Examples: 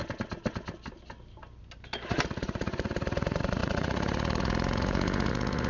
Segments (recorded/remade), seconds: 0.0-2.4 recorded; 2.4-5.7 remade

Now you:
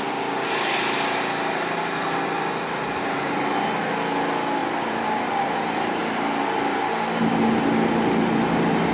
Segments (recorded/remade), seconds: 0.0-4.6 recorded; 4.6-6.0 remade; 6.0-8.9 recorded

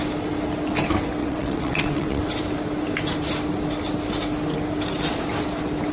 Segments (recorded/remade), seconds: 0.0-1.2 recorded; 1.2-2.3 remade; 2.3-5.9 recorded

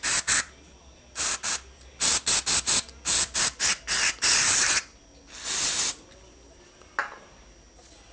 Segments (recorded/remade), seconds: 0.0-8.1 recorded

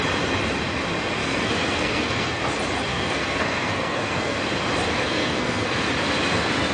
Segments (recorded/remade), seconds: 0.0-1.2 recorded; 1.2-2.4 remade; 2.4-2.9 recorded; 2.9-4.4 remade; 4.4-5.0 recorded; 5.0-5.9 remade; 5.9-6.7 recorded

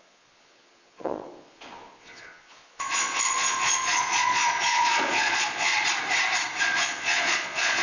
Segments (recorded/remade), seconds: 0.0-5.7 remade; 5.7-6.6 recorded; 6.6-7.8 remade